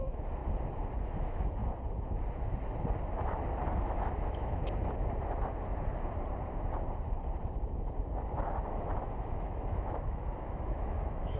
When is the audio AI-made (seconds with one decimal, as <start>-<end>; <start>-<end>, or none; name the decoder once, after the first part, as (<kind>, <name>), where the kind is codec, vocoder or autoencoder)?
0.0-0.4 (autoencoder, DAC-VAE); 1.0-1.6; 3.7-4.6; 8.7-11.4